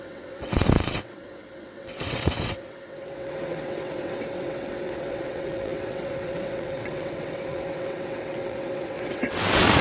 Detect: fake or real fake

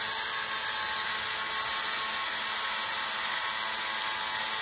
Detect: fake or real real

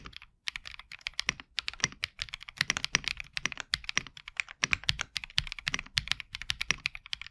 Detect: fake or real real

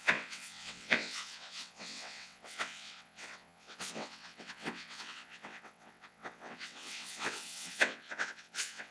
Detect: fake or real fake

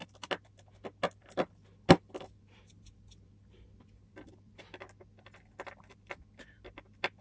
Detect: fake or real real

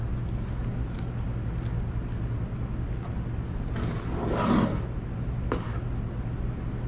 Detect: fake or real real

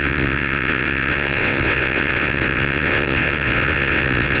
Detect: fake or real fake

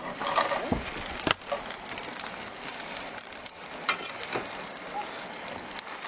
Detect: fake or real real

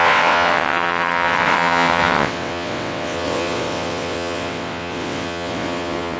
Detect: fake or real fake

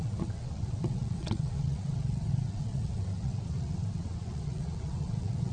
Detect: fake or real fake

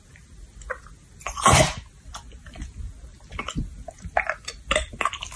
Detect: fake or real real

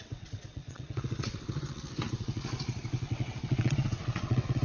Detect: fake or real fake